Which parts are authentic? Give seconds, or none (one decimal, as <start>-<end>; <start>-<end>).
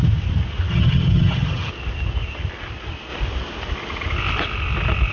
0.0-0.7; 1.7-5.1